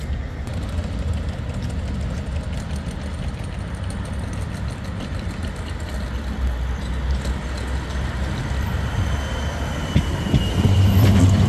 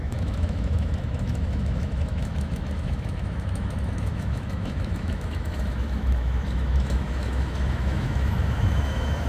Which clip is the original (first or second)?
first